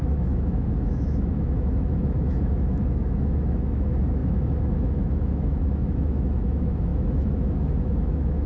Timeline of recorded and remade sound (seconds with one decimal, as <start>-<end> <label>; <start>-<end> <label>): 0.0-8.5 remade